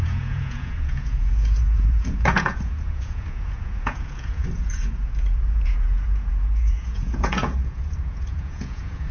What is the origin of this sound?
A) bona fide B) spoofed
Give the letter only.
B